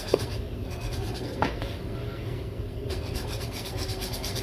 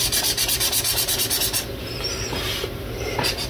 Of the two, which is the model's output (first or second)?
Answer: first